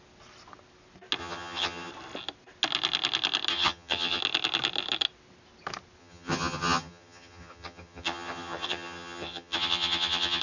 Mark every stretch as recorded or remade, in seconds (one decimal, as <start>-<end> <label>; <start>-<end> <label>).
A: 0.0-1.2 recorded; 1.2-1.9 remade; 1.9-3.5 recorded; 3.5-4.2 remade; 4.2-6.0 recorded; 6.0-10.4 remade